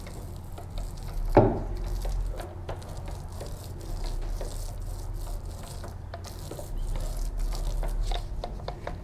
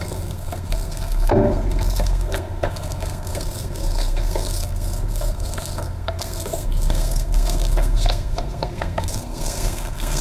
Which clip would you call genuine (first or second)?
first